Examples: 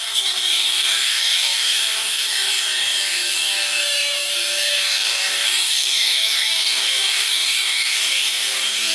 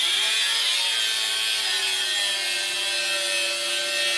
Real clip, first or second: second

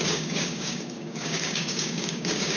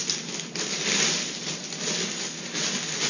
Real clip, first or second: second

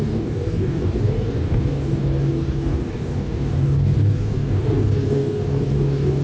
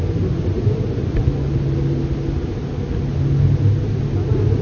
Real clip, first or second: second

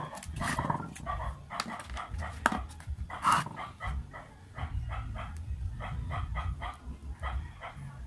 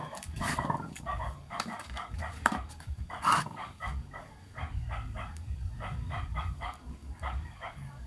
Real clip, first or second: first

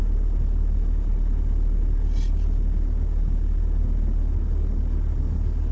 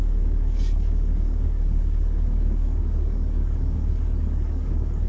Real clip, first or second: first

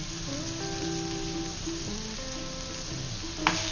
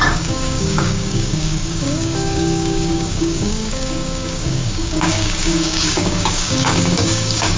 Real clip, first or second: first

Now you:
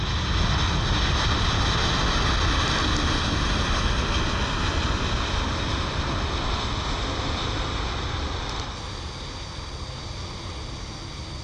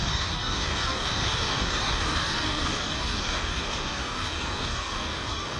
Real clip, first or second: first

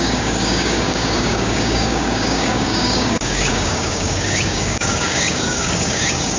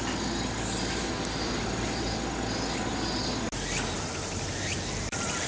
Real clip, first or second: second